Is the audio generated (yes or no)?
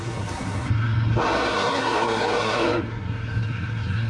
yes